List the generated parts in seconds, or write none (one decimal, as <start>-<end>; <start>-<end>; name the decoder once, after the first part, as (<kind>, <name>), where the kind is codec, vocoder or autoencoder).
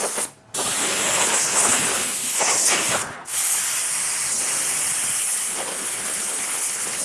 0.8-3.6 (codec, HILCodec); 5.2-7.0